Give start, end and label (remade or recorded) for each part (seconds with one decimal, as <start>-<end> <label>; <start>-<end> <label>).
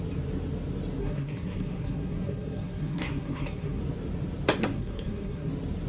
0.0-1.0 recorded; 1.0-3.8 remade; 3.8-4.6 recorded; 4.6-5.5 remade; 5.5-5.9 recorded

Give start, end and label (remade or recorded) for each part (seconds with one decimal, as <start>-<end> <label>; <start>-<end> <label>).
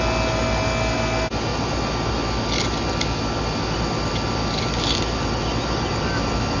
0.0-1.5 recorded; 1.5-2.1 remade; 2.1-6.6 recorded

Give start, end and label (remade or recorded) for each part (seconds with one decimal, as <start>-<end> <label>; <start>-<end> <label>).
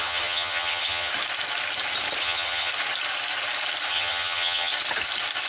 0.0-1.1 remade; 1.1-2.2 recorded; 2.2-2.7 remade; 2.7-3.9 recorded; 3.9-4.7 remade; 4.7-5.5 recorded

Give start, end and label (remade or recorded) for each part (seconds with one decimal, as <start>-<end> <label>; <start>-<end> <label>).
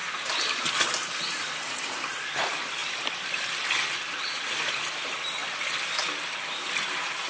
0.0-0.7 recorded; 0.7-7.3 remade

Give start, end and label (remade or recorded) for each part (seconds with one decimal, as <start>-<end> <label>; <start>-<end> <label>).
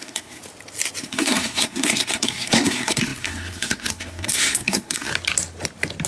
0.0-0.4 remade; 0.4-1.0 recorded; 1.0-5.1 remade; 5.1-6.1 recorded